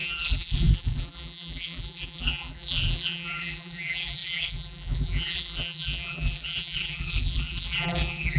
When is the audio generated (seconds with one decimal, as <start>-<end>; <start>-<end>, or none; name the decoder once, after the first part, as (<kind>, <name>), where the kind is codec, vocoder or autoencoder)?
0.0-8.4 (vocoder, BigVGAN v2)